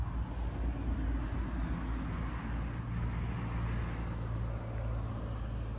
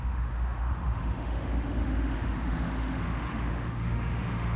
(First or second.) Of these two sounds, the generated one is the second